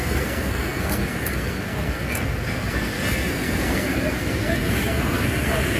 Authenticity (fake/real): fake